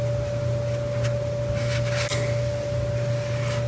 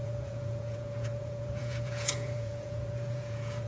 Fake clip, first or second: second